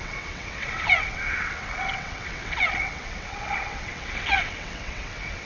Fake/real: fake